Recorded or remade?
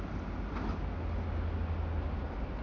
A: recorded